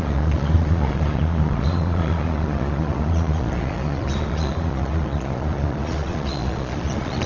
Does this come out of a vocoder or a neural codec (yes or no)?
yes